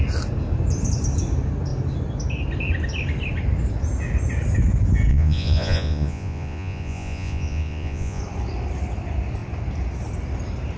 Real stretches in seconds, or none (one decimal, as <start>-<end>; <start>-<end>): 0.0-5.1; 8.2-10.8